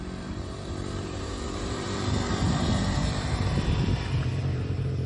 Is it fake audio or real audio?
fake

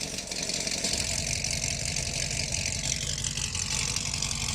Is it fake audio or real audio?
fake